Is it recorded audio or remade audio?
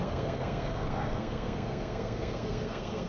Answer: remade